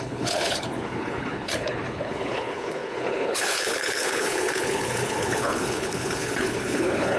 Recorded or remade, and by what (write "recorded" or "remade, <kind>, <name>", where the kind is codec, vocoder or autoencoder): remade, codec, HILCodec